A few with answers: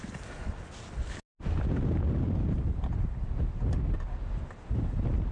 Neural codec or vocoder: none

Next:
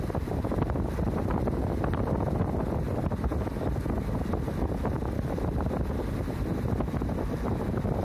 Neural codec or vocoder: none